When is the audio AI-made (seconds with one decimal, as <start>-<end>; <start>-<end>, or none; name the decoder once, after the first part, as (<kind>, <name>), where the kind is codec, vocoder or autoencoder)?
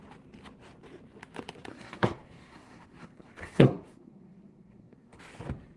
1.7-5.2 (codec, SNAC)